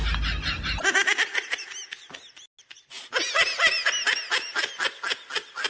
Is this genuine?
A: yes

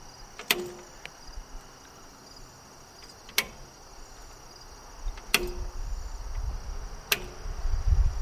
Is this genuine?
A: yes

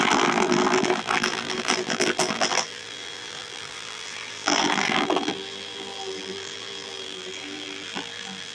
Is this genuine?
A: no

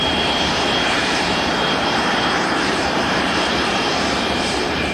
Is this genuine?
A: no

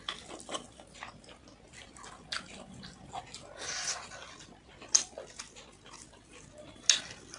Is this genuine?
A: yes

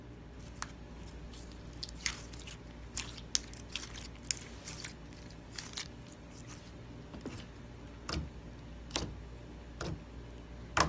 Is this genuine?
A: yes